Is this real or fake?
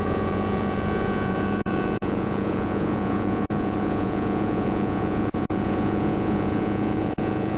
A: fake